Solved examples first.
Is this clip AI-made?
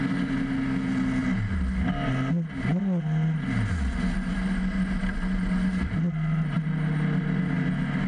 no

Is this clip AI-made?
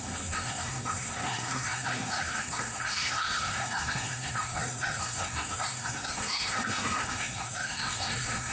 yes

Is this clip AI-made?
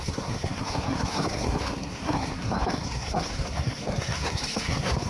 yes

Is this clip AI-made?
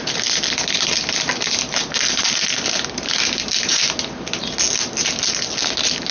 no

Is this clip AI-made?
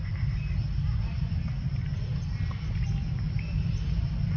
no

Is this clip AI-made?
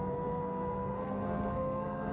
yes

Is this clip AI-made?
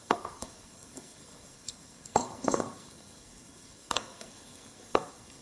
yes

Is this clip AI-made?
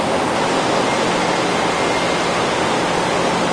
no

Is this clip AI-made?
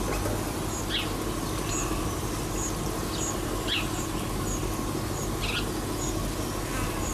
no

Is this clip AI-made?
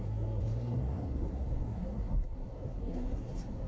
yes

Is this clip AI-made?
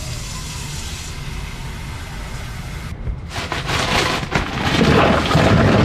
no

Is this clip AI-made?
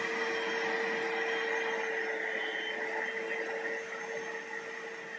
no